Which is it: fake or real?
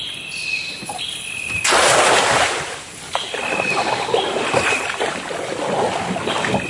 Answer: real